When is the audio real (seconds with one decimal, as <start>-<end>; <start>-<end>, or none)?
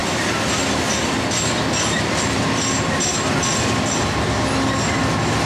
0.0-5.5